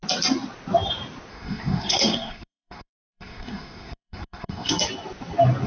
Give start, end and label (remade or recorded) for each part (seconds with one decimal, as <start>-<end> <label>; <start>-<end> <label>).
0.0-1.3 recorded; 1.3-4.7 remade; 4.7-5.7 recorded